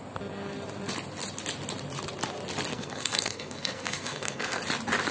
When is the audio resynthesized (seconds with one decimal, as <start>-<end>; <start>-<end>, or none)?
2.7-4.6